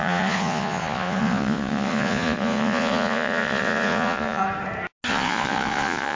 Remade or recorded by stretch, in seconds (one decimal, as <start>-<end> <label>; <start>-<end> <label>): 0.0-4.4 remade; 4.4-5.1 recorded; 5.1-6.2 remade